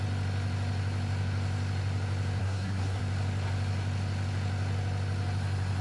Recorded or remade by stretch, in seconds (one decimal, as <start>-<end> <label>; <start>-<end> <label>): 0.0-2.4 recorded; 2.4-3.0 remade; 3.0-5.8 recorded